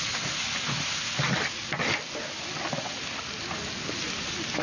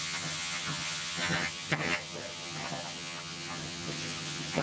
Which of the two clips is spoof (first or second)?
second